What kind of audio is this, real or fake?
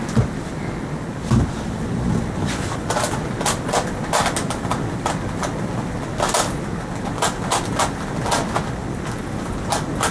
real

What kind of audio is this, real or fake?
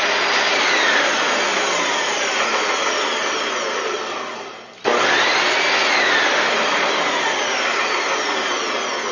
real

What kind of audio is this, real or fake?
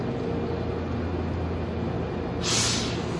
real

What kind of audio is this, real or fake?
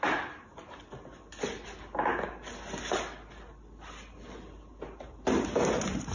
real